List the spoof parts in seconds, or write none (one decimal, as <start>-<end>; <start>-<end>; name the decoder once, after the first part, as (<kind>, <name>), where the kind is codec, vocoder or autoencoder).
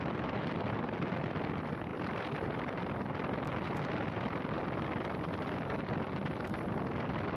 0.0-7.4 (vocoder, BigVGAN v2)